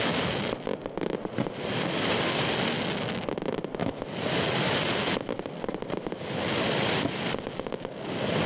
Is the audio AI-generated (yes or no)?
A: no